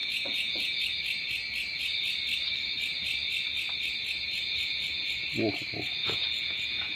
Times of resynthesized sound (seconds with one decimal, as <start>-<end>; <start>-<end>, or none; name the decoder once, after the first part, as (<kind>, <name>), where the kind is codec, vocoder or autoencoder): 0.0-0.8 (vocoder, Vocos); 6.0-7.0